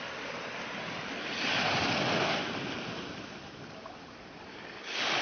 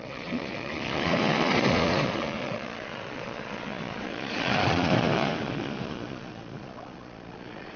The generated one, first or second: second